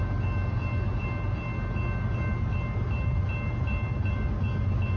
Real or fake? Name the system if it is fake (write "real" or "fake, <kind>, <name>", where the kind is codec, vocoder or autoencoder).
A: real